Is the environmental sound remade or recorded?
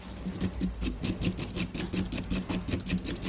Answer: recorded